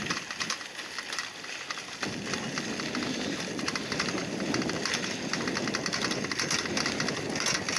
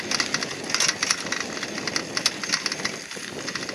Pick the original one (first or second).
second